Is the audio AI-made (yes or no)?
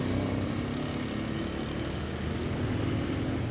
no